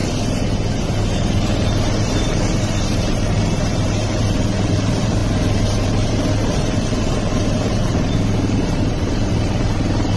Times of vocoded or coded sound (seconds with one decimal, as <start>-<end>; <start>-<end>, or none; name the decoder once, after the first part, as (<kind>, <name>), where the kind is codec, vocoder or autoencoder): 1.1-10.2 (vocoder, BigVGAN v2)